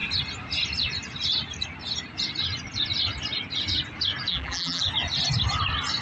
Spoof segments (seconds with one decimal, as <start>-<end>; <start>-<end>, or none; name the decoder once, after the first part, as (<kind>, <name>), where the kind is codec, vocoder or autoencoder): 4.3-4.8 (vocoder, BigVGAN v2)